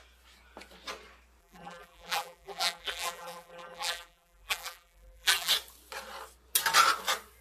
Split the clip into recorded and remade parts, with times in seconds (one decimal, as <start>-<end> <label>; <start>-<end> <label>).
0.0-1.4 recorded; 1.4-5.5 remade; 5.5-7.4 recorded